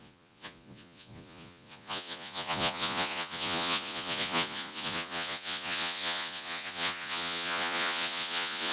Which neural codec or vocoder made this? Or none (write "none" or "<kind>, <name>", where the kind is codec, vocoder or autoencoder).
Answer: vocoder, Vocos